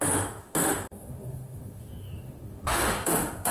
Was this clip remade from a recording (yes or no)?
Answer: yes